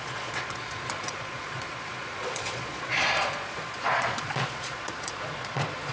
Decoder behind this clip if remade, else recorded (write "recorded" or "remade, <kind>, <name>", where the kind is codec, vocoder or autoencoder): remade, vocoder, Vocos